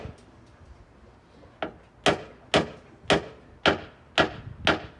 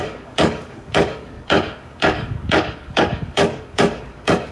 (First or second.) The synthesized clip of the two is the second